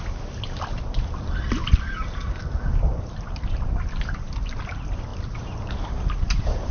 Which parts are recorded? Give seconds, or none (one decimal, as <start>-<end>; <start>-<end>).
0.0-6.7